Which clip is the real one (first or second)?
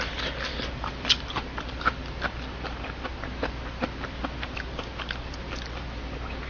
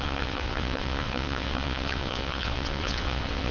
first